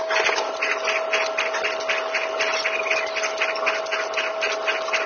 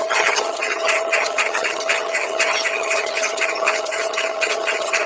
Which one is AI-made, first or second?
second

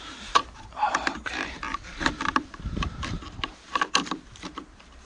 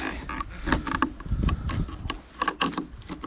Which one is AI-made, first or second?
first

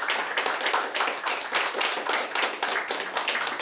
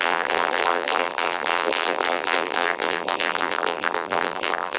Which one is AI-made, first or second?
second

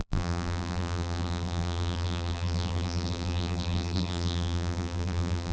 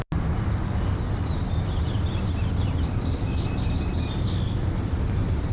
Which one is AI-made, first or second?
first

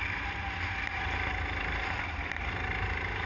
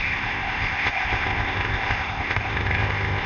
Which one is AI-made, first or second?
second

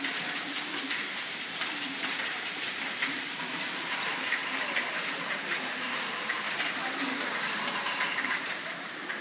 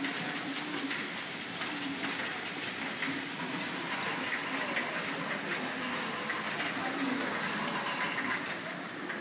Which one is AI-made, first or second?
first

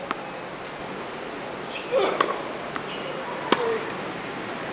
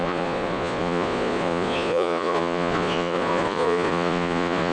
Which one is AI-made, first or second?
second